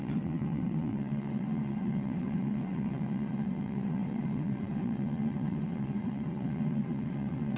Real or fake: fake